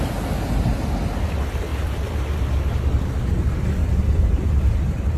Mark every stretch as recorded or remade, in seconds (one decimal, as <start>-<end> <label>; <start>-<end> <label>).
0.0-1.7 recorded; 1.7-2.7 remade; 2.7-3.8 recorded; 3.8-5.2 remade